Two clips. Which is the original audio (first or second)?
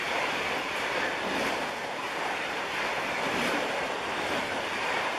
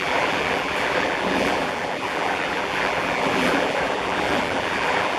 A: first